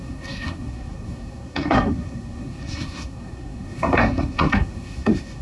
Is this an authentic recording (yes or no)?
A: no